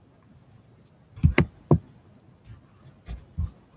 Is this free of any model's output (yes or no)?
yes